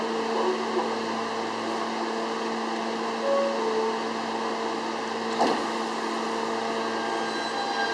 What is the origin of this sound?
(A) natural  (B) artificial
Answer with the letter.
A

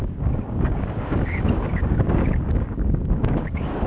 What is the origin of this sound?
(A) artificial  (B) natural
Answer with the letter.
A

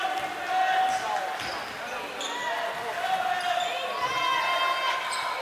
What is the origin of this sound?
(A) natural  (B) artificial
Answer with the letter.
A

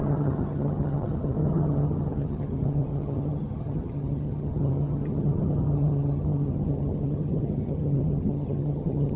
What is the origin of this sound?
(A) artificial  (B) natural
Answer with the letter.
A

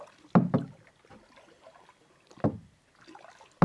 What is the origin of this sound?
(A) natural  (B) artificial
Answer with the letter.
A